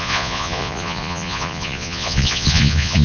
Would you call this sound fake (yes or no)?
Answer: yes